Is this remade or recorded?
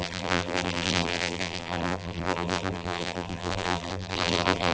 remade